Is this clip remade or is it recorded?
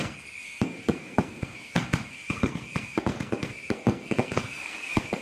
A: remade